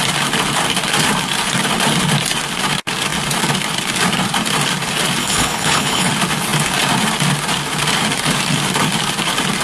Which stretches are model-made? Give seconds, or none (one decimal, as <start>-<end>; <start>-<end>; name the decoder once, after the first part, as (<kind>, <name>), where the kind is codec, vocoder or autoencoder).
5.2-6.1 (codec, HILCodec)